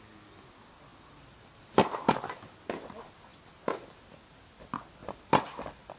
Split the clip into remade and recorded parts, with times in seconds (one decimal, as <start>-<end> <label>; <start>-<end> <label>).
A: 0.0-6.0 recorded